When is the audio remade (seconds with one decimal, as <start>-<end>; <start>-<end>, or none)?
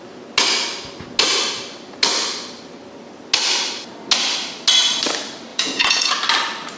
5.5-6.1